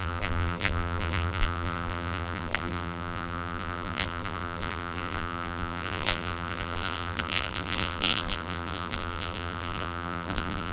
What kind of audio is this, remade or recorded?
remade